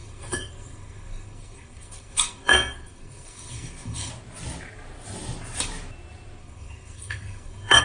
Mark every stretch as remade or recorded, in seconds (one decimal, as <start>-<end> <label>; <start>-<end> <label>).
0.0-4.1 remade; 4.1-6.4 recorded; 6.4-7.8 remade